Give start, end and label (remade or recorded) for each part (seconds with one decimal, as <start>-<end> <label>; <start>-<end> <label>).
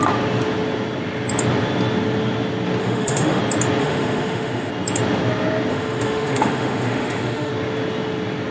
0.0-2.8 recorded; 2.8-3.4 remade; 3.4-3.8 recorded; 3.8-4.7 remade; 4.7-5.7 recorded; 5.7-7.5 remade; 7.5-8.5 recorded